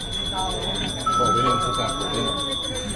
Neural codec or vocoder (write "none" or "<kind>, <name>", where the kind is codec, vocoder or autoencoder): vocoder, Vocos